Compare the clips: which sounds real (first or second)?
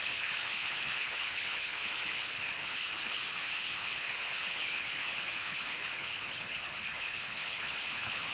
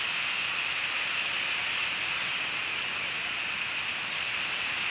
second